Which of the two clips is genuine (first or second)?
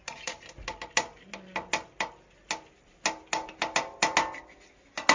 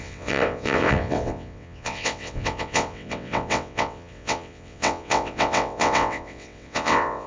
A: first